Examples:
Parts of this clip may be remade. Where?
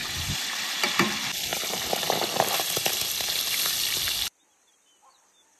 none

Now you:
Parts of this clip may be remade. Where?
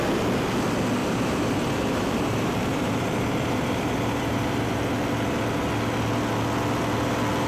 1.0-4.9 (vocoder, BigVGAN v2)